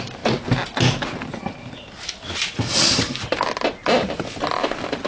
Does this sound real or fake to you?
real